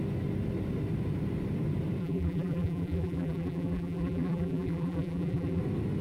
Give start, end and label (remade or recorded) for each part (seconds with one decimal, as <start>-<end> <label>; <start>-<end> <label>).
0.0-2.0 recorded; 2.0-5.6 remade; 5.6-6.0 recorded